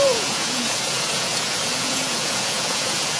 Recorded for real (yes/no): no